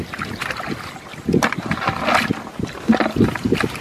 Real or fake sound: real